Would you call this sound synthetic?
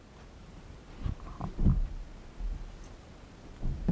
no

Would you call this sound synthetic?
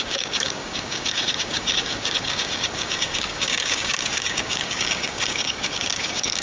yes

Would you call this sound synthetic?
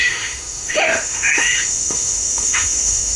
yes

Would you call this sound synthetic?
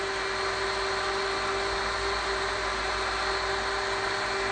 no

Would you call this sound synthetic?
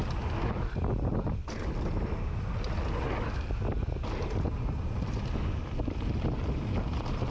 no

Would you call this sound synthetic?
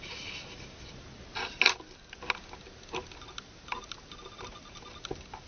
no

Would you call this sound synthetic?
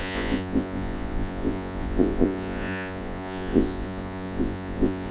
yes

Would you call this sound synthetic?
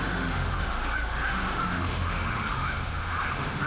yes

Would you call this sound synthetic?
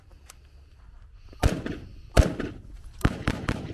no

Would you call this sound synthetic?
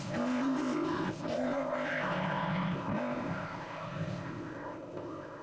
yes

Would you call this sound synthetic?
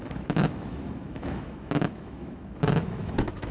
yes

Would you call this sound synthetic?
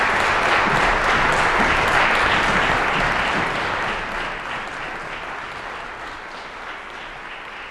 no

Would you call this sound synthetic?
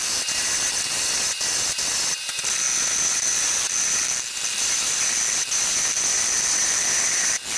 no